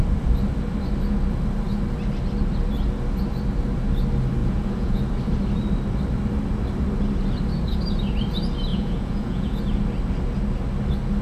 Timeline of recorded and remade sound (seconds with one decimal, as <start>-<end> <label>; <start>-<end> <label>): 0.0-4.4 recorded; 4.4-5.0 remade; 5.0-8.7 recorded; 8.7-9.6 remade; 9.6-11.2 recorded